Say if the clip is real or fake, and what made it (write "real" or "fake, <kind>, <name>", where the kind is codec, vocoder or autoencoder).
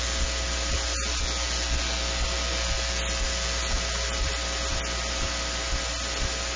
real